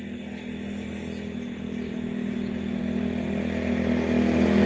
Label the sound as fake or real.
real